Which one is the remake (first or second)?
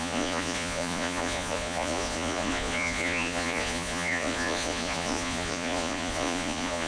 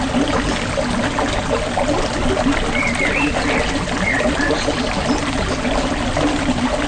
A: first